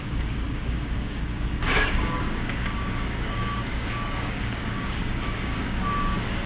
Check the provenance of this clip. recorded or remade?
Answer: remade